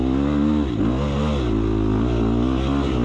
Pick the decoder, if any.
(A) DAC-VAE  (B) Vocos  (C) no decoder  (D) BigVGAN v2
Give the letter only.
C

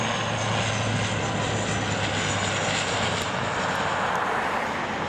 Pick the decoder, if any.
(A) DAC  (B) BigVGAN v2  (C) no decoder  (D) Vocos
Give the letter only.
C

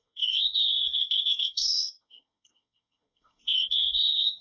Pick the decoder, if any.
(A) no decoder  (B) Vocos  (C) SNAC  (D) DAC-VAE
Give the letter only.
C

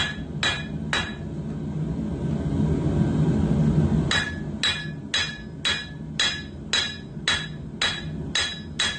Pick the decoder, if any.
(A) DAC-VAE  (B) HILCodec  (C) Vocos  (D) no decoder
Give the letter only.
D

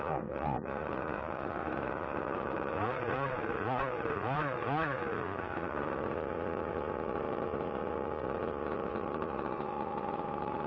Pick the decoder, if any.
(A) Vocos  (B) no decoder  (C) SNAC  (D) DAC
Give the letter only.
A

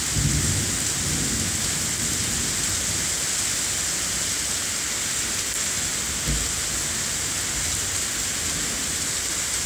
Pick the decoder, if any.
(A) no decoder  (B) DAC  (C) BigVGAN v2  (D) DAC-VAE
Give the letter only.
A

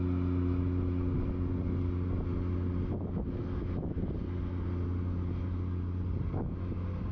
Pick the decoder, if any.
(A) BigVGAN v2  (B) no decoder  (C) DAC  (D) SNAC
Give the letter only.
B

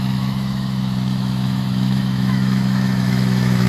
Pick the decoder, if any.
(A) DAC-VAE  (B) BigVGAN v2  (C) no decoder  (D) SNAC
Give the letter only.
A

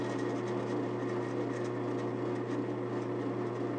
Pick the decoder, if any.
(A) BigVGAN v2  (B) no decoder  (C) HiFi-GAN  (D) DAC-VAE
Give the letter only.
B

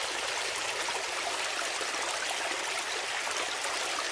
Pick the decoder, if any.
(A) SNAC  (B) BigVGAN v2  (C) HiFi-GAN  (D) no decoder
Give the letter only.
D